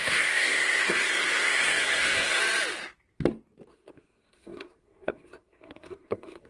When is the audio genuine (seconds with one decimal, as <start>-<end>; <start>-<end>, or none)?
2.4-3.7